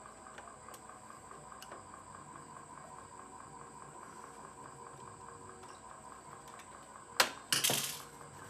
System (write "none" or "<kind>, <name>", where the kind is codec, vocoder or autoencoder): none